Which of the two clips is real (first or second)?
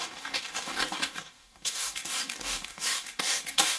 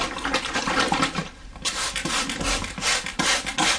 second